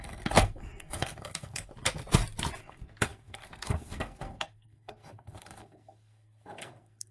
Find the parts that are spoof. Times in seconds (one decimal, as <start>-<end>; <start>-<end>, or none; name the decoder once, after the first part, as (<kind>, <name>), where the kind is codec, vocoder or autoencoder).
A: 0.0-1.7 (codec, SNAC); 2.6-7.1